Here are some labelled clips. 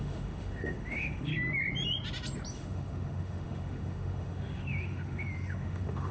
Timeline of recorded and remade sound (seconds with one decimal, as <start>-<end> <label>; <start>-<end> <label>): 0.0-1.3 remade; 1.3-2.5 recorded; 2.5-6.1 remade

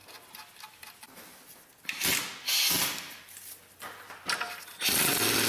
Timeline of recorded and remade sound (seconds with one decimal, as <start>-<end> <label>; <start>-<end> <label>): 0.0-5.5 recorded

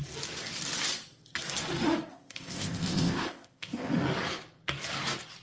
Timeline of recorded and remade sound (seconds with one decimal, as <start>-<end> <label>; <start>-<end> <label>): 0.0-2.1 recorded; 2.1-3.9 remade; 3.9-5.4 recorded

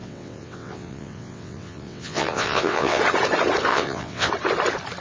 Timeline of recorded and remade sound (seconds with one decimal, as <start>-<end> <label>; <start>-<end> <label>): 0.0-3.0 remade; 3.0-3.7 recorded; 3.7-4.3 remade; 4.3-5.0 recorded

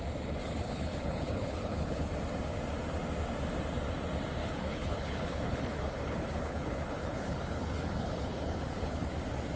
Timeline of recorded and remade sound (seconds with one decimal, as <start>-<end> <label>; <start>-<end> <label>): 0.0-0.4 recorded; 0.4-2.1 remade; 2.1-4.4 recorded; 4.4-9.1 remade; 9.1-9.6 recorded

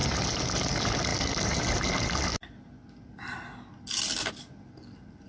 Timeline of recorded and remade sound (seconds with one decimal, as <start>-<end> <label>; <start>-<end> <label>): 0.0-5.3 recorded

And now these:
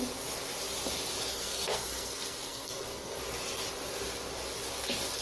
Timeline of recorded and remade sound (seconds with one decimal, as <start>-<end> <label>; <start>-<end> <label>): 0.0-1.3 recorded; 1.3-3.2 remade; 3.2-5.2 recorded